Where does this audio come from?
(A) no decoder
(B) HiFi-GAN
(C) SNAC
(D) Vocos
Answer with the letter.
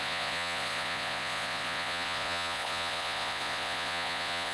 D